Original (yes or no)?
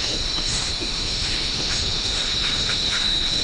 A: no